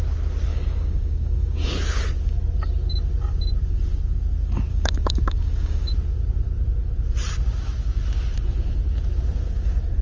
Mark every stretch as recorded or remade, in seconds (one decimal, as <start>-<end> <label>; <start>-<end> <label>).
0.0-0.5 recorded; 0.5-1.7 remade; 1.7-4.7 recorded; 4.7-5.9 remade; 5.9-10.0 recorded